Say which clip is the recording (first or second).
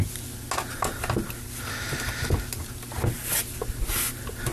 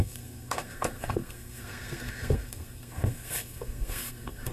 first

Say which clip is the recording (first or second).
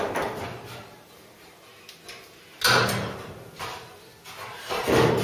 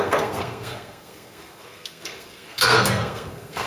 first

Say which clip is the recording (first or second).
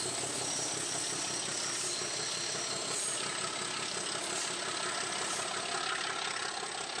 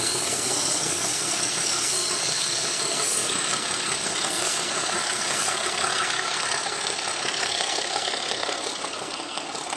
first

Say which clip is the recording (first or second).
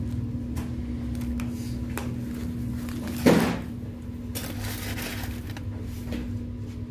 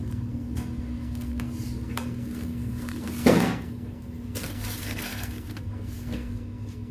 first